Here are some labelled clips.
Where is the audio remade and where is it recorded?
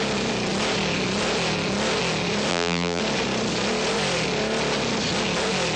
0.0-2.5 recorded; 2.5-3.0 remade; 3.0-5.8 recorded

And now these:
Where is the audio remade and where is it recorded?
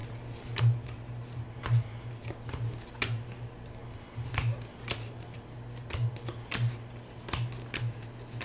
0.0-8.4 recorded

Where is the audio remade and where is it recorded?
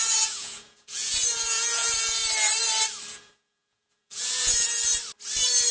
0.0-2.2 remade; 2.2-3.1 recorded; 3.1-4.9 remade; 4.9-5.7 recorded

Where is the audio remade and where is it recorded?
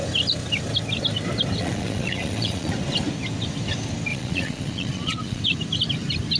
0.0-1.6 recorded; 1.6-2.7 remade; 2.7-4.1 recorded; 4.1-5.4 remade; 5.4-6.4 recorded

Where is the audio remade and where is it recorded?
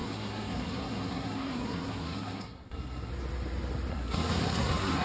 0.0-3.1 remade; 3.1-3.9 recorded; 3.9-5.0 remade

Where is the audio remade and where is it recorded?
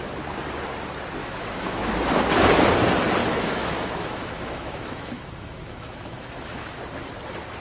0.0-1.2 recorded; 1.2-1.8 remade; 1.8-3.2 recorded; 3.2-6.8 remade; 6.8-7.6 recorded